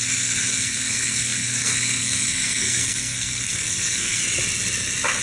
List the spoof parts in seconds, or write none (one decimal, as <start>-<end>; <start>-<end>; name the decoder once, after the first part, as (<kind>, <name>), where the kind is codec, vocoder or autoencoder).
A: 0.0-4.2 (codec, SNAC)